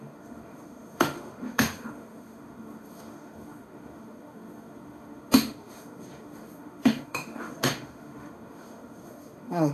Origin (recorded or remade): remade